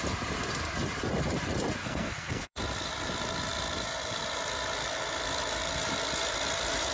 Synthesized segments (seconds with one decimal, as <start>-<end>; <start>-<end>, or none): 1.8-2.6